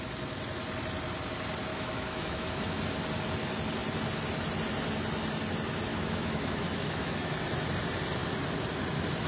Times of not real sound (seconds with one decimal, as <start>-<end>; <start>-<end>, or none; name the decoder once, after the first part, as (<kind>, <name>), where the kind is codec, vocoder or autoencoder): 1.7-2.8 (autoencoder, DAC-VAE); 5.9-7.3